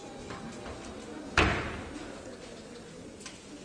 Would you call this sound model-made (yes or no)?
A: no